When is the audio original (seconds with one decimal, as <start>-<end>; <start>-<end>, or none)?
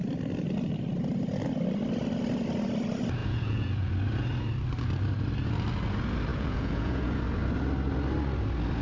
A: 0.0-3.2; 3.9-6.3; 7.1-8.8